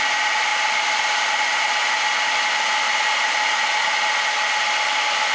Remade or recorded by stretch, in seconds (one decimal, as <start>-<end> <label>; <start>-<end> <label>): 0.0-5.3 recorded